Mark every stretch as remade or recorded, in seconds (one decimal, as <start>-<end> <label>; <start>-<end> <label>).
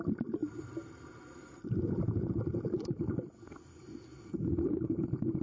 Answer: 0.0-0.4 recorded; 0.4-2.3 remade; 2.3-5.4 recorded